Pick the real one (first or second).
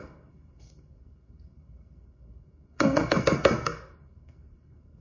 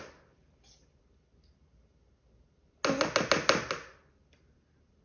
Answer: second